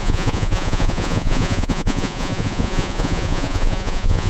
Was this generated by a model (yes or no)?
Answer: yes